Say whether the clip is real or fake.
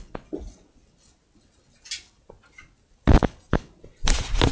real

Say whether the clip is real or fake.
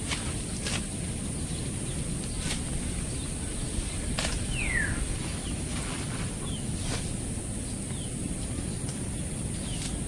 real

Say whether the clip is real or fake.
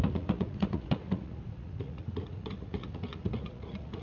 fake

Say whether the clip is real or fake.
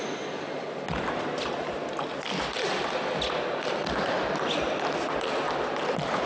real